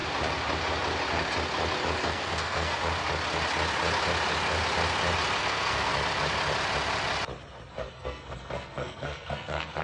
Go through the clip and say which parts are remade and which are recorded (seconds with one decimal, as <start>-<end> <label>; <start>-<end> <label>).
0.0-2.0 recorded; 2.0-2.8 remade; 2.8-5.4 recorded; 5.4-5.9 remade; 5.9-7.7 recorded; 7.7-9.8 remade